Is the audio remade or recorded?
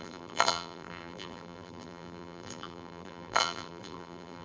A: remade